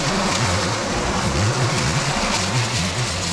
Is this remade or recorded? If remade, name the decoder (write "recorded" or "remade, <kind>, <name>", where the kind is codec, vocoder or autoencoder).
recorded